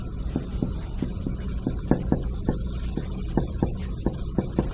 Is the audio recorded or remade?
recorded